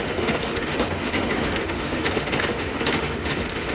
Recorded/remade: remade